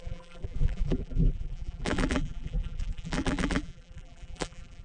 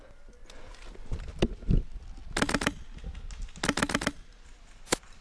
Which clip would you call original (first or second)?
second